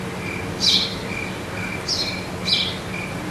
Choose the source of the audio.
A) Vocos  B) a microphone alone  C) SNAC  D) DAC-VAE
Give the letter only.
B